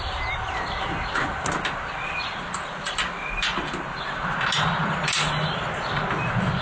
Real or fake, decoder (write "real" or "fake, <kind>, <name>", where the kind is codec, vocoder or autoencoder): real